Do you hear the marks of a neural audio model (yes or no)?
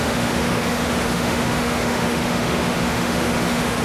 yes